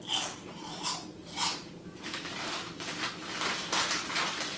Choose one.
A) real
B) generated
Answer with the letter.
A